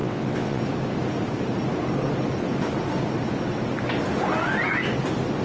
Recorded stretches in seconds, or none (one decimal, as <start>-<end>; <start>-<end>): 0.6-5.4